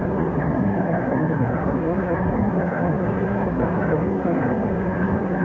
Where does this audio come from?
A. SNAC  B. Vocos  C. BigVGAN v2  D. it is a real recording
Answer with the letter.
A